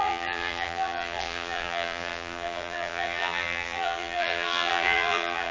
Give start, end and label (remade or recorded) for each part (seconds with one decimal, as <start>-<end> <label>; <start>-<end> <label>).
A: 0.0-5.5 remade